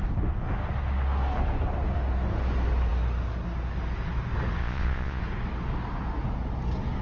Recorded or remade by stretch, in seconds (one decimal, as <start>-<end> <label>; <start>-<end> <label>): 0.0-4.6 recorded; 4.6-5.2 remade; 5.2-7.0 recorded